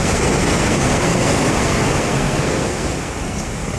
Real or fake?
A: fake